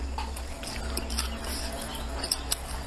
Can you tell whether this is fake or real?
real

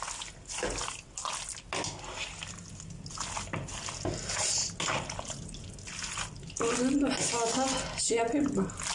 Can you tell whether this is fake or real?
real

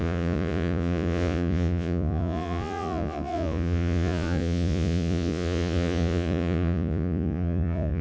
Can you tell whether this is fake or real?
fake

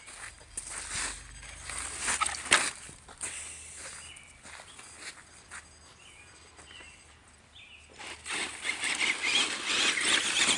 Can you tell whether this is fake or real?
real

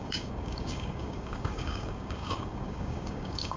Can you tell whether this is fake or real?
fake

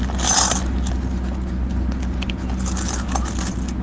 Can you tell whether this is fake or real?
real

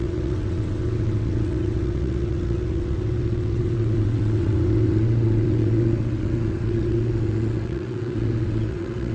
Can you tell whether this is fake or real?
fake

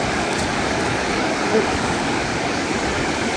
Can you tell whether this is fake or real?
fake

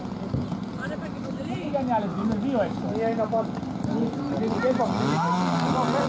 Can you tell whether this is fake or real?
real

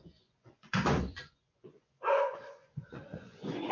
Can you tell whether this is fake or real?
fake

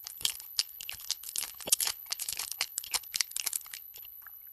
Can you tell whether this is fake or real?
fake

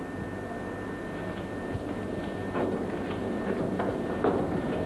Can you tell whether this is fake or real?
real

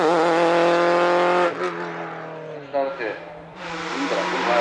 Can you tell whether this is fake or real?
real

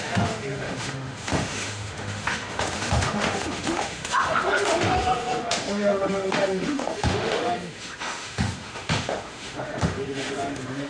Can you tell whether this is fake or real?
fake